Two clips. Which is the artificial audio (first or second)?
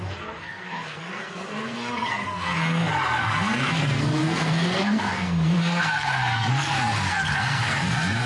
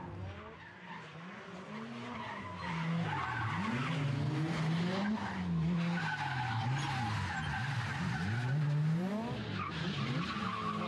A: first